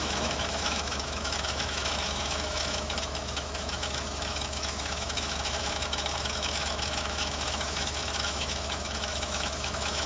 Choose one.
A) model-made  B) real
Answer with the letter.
A